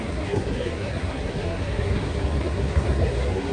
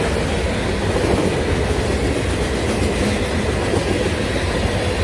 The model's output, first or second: first